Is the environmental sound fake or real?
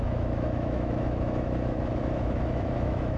fake